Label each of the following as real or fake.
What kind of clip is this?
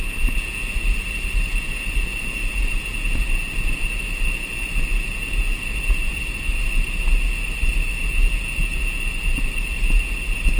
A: fake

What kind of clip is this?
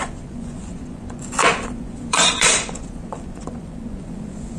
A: fake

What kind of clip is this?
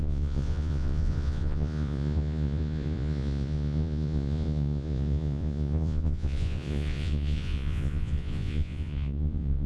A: fake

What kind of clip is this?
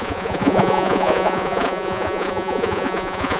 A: fake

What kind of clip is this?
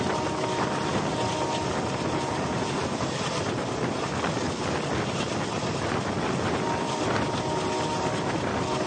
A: real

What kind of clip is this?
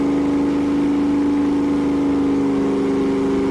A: real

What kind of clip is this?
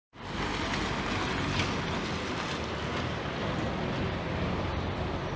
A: real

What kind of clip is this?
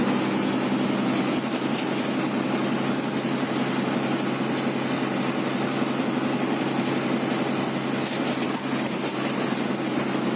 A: real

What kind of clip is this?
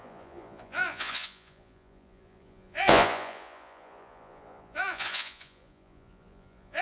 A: fake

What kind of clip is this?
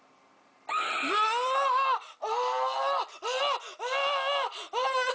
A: real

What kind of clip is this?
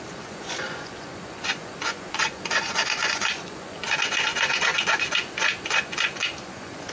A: fake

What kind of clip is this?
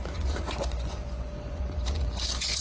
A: fake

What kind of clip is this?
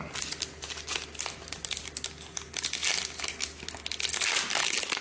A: real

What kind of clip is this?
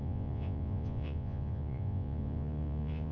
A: fake